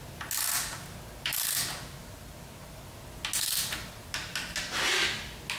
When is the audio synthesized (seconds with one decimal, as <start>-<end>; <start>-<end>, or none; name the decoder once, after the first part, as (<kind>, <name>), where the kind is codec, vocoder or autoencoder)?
none